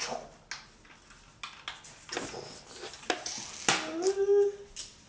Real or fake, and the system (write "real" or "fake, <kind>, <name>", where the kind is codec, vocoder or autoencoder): real